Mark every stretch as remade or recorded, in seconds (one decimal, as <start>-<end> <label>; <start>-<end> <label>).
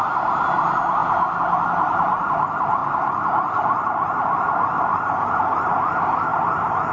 0.0-6.9 recorded